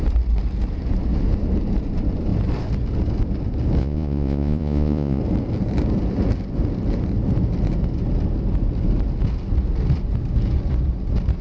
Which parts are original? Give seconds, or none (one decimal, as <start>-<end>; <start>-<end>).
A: 0.0-3.8; 5.2-11.4